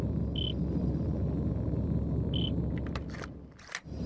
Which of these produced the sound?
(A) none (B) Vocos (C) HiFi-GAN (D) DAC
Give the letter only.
A